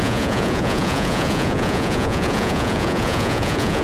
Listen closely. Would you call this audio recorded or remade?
remade